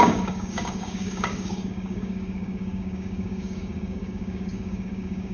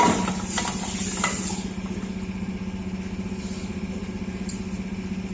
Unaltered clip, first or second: second